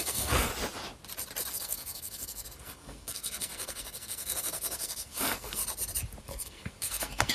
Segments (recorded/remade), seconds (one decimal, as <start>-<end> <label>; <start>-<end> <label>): 0.0-0.5 remade; 0.5-1.5 recorded; 1.5-5.6 remade; 5.6-6.2 recorded; 6.2-7.3 remade